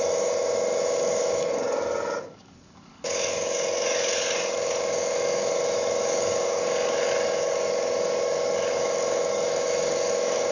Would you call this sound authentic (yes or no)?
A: no